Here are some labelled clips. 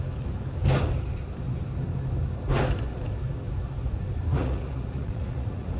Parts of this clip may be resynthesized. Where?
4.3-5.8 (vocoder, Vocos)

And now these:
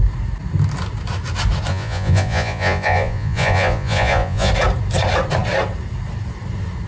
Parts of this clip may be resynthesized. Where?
1.7-4.5 (vocoder, Vocos)

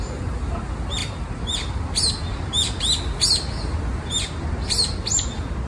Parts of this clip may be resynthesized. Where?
none